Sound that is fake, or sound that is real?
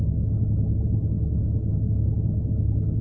real